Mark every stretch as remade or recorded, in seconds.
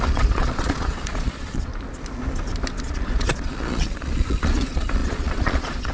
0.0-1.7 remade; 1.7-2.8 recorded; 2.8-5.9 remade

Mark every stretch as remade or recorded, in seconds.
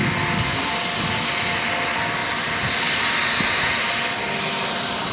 0.0-5.1 recorded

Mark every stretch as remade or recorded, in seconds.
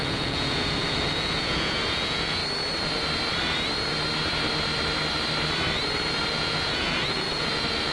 0.0-2.4 remade; 2.4-6.3 recorded; 6.3-7.9 remade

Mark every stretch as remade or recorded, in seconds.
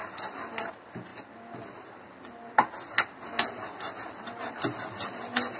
0.0-5.6 recorded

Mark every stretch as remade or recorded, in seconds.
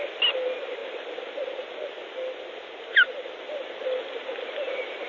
0.0-5.1 recorded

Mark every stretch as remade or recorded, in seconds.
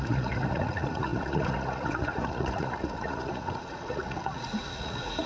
0.0-5.3 remade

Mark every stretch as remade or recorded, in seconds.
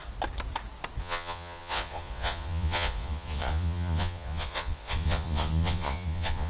0.0-1.0 recorded; 1.0-6.5 remade